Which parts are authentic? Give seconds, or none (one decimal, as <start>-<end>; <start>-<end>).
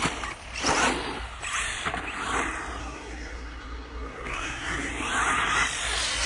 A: 0.0-2.8; 4.9-6.3